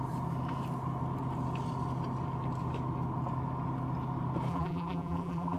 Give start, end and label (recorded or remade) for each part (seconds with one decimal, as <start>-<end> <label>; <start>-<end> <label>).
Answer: 0.0-4.5 recorded; 4.5-5.6 remade